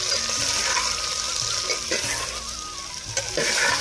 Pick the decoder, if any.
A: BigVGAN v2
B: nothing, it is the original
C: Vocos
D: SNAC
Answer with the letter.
B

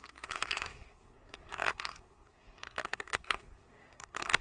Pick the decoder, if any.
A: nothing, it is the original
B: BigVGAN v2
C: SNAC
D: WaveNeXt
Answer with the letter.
C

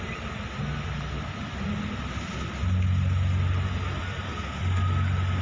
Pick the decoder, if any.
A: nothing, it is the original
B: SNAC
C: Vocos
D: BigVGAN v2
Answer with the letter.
A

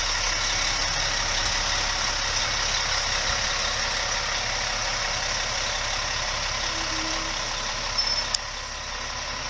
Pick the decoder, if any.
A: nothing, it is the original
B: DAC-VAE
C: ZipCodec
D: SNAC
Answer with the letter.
A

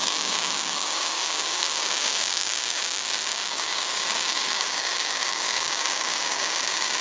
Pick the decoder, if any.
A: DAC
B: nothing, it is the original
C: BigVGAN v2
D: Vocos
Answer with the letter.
A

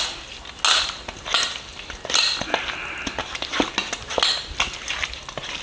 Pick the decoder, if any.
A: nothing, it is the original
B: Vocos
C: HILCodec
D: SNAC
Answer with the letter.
A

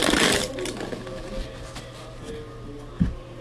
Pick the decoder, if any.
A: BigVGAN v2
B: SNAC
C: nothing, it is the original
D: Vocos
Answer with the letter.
C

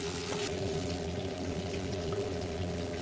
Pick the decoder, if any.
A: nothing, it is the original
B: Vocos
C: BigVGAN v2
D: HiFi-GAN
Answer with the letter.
B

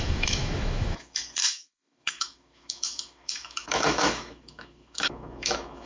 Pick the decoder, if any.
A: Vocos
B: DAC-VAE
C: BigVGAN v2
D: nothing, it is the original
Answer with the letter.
B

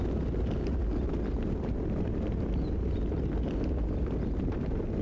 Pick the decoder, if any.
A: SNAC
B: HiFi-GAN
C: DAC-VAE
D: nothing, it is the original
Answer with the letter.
D